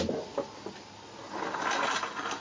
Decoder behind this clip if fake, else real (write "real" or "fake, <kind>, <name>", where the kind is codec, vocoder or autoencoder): real